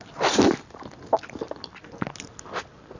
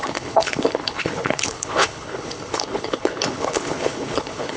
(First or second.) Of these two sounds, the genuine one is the first